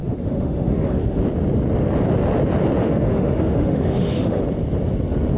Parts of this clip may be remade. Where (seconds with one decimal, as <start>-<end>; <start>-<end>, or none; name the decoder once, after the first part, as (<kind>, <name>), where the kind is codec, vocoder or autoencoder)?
0.0-1.2 (autoencoder, DAC-VAE); 2.8-4.4